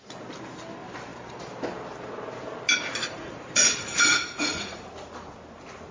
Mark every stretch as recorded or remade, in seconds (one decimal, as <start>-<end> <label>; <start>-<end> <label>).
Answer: 0.0-3.0 recorded; 3.0-4.8 remade; 4.8-5.9 recorded